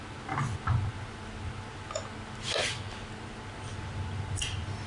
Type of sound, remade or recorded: recorded